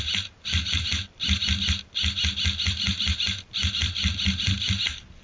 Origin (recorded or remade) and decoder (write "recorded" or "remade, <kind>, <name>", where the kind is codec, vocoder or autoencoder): recorded